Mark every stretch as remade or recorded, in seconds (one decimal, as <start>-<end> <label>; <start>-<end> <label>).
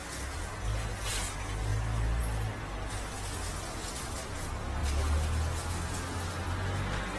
0.0-7.2 recorded